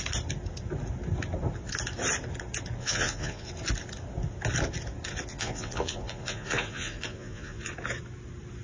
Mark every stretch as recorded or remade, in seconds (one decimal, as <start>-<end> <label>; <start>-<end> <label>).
0.0-2.8 recorded; 2.8-3.5 remade; 3.5-5.3 recorded; 5.3-7.7 remade; 7.7-8.6 recorded